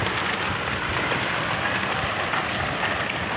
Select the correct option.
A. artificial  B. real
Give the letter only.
B